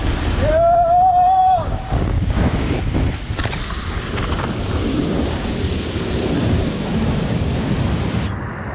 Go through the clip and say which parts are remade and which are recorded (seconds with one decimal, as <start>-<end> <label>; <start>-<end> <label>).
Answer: 0.0-1.4 recorded; 1.4-2.8 remade; 2.8-4.9 recorded; 4.9-5.6 remade; 5.6-6.4 recorded; 6.4-7.7 remade; 7.7-8.7 recorded